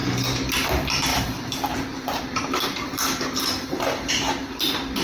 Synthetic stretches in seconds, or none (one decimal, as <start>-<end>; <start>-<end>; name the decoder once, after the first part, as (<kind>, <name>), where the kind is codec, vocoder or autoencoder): 1.1-4.1 (vocoder, BigVGAN v2)